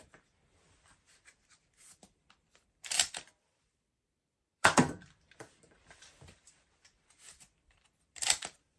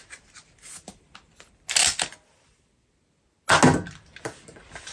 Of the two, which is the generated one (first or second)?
first